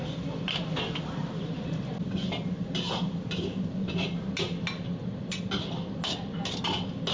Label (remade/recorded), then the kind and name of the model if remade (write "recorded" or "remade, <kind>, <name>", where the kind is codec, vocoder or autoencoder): recorded